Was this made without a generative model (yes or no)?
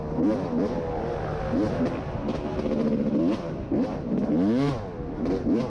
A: yes